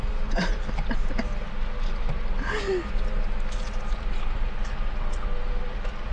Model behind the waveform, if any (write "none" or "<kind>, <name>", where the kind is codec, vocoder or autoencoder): vocoder, BigVGAN v2